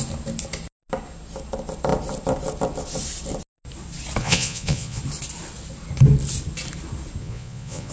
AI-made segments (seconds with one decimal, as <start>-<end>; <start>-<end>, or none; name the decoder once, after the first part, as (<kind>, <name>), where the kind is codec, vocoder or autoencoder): 4.2-5.0 (vocoder, Vocos); 7.2-7.9